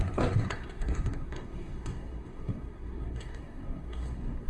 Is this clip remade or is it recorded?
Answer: remade